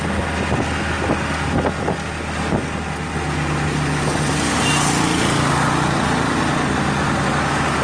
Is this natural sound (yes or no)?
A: yes